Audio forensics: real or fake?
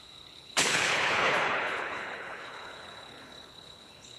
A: fake